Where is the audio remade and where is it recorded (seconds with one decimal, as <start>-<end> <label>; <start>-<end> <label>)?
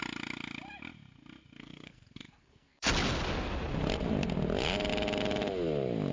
0.0-1.6 recorded; 1.6-2.9 remade; 2.9-6.1 recorded